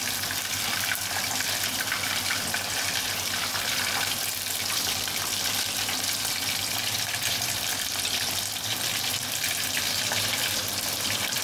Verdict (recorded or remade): remade